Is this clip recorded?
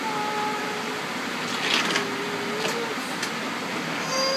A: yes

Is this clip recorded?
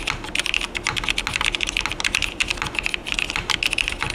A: yes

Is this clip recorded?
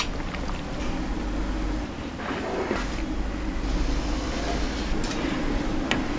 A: yes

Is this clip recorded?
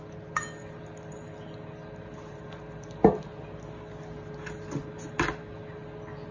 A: yes